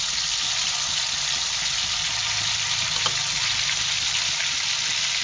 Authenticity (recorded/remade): recorded